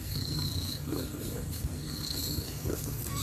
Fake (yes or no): yes